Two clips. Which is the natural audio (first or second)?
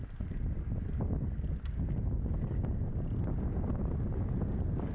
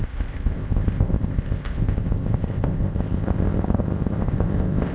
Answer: first